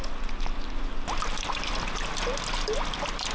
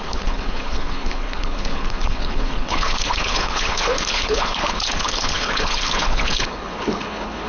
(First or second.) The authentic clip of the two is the first